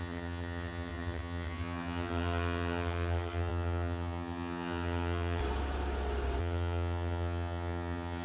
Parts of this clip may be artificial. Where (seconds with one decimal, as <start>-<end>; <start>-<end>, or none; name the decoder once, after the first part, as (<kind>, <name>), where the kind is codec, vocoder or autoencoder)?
0.0-5.4 (vocoder, HiFi-GAN); 6.4-8.2

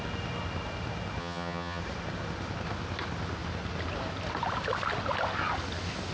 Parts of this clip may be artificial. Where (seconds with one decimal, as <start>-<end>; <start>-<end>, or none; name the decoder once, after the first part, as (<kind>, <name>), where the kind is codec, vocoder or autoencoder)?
1.2-1.8 (vocoder, HiFi-GAN)

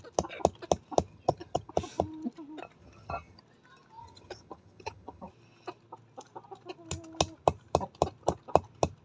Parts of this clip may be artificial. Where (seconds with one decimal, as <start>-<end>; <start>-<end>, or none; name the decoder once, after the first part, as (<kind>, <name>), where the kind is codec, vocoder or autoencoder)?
1.1-1.7 (vocoder, HiFi-GAN); 2.8-3.4; 4.0-5.3